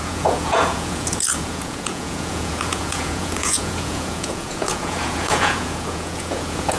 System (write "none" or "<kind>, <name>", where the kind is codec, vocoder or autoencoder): vocoder, Vocos